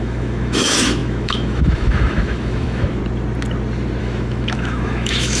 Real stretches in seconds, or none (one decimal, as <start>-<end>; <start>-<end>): 3.0-4.0